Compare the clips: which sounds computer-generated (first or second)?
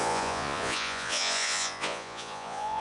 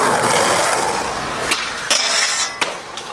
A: first